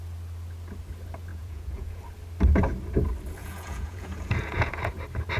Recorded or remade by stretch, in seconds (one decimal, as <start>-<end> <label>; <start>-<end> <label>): 0.0-1.3 recorded; 1.3-2.0 remade; 2.0-3.4 recorded; 3.4-4.9 remade; 4.9-5.4 recorded

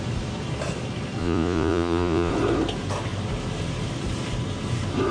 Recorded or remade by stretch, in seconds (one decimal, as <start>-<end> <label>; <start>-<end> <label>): 0.0-1.2 recorded; 1.2-2.3 remade; 2.3-5.1 recorded

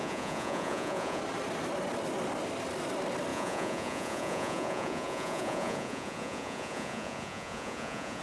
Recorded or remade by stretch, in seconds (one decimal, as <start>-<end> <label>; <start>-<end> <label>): 0.0-1.2 remade; 1.2-3.3 recorded; 3.3-8.2 remade

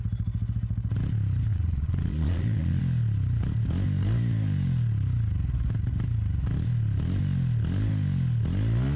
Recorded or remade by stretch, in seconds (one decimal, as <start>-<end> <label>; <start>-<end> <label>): 0.0-1.5 recorded; 1.5-2.8 remade; 2.8-9.0 recorded

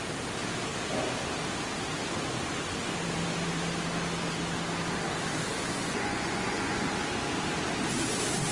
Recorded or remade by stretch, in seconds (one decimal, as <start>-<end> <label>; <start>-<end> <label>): 0.0-5.5 recorded; 5.5-6.9 remade; 6.9-8.5 recorded

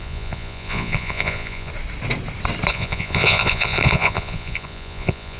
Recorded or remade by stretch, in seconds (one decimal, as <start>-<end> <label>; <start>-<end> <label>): 0.0-1.7 remade; 1.7-2.7 recorded; 2.7-5.4 remade

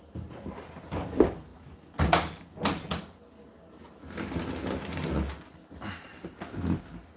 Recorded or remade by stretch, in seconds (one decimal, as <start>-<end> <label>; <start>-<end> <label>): 0.0-7.2 recorded

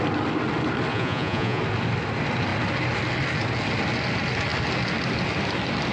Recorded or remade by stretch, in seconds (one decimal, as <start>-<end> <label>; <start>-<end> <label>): 0.0-0.9 recorded; 0.9-1.6 remade; 1.6-5.9 recorded